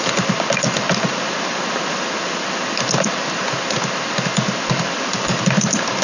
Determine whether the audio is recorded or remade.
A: recorded